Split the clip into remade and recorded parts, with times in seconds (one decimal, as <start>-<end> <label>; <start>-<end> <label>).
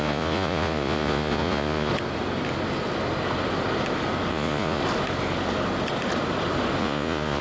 0.0-1.9 remade; 1.9-4.3 recorded; 4.3-4.8 remade; 4.8-6.8 recorded; 6.8-7.4 remade